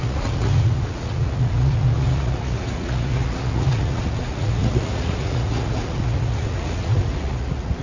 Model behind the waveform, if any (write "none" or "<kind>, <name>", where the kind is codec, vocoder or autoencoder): vocoder, Vocos